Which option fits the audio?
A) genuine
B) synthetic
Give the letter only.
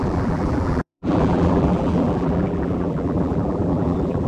B